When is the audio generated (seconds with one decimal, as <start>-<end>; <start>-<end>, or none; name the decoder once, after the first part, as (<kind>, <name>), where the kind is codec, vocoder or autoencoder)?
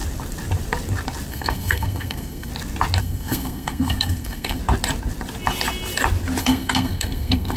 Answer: 1.3-2.5 (codec, SNAC); 3.0-4.6; 6.4-7.6